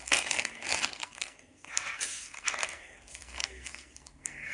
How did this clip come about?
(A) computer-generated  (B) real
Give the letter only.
A